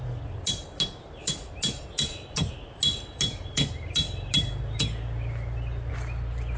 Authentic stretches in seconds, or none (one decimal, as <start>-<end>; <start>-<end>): 0.0-6.6